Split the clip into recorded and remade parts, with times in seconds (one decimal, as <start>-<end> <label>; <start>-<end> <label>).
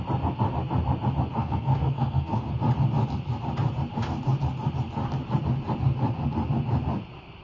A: 0.0-1.3 recorded; 1.3-2.5 remade; 2.5-7.4 recorded